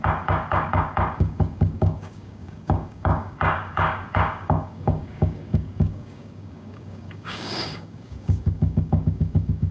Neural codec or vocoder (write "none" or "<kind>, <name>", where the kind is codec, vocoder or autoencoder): codec, DAC